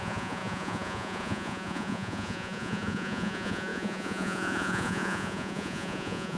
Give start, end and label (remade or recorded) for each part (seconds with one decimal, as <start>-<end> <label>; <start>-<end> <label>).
0.0-6.4 remade